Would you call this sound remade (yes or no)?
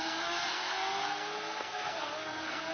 yes